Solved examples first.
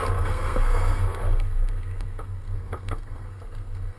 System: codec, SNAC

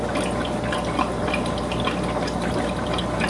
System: none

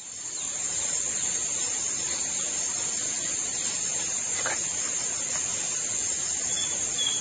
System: none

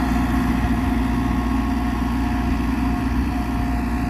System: none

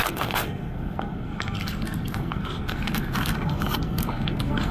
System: codec, SNAC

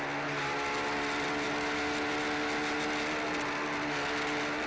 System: none